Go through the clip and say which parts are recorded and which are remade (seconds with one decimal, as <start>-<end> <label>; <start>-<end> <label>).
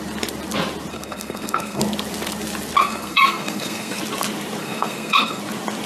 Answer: 0.0-0.9 recorded; 0.9-1.8 remade; 1.8-2.8 recorded; 2.8-4.0 remade; 4.0-4.6 recorded; 4.6-5.4 remade; 5.4-5.9 recorded